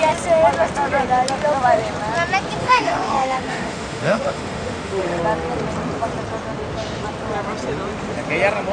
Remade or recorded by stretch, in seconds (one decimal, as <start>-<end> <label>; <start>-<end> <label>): 0.0-2.6 recorded; 2.6-5.2 remade; 5.2-8.7 recorded